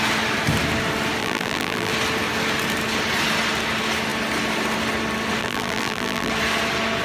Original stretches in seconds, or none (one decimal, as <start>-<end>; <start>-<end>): 0.0-1.2; 1.9-5.4; 6.3-7.0